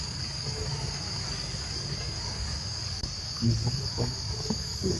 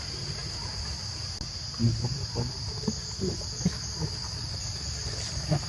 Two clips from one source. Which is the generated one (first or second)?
first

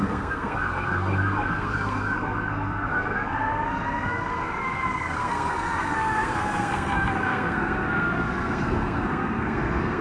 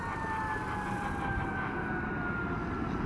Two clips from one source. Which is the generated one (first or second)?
first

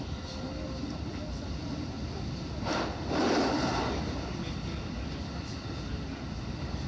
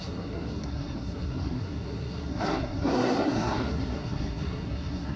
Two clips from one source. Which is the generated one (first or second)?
second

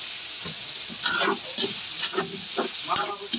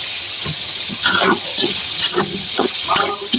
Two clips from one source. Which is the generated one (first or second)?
second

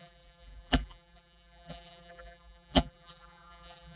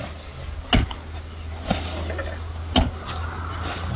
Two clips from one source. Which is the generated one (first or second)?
first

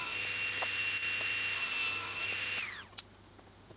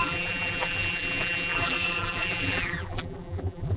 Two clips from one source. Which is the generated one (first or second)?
second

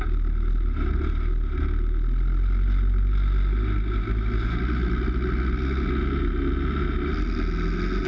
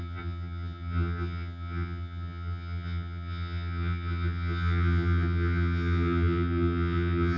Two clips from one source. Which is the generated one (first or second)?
second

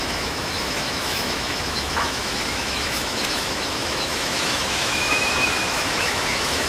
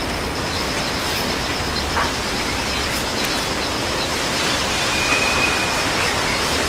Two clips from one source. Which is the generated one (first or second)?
first